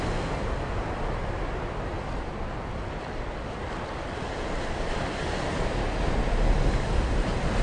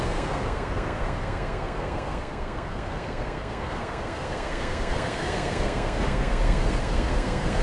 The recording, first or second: first